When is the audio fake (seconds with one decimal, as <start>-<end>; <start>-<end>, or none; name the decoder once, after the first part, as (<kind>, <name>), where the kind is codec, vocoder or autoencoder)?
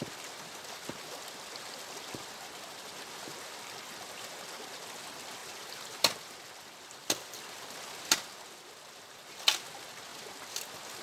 none